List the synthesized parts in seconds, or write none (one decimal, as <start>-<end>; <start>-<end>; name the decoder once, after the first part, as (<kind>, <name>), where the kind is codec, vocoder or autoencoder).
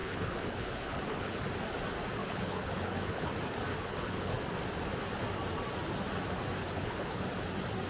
0.0-1.4 (codec, HILCodec); 2.2-3.3; 3.7-4.4; 6.6-7.2